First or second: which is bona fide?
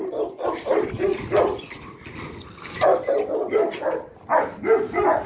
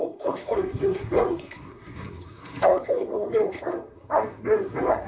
first